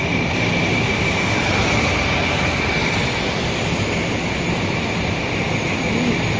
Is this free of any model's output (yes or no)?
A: yes